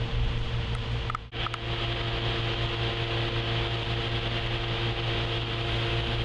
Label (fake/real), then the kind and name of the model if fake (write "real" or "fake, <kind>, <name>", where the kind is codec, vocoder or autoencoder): real